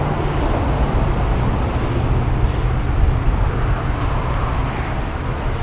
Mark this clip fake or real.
real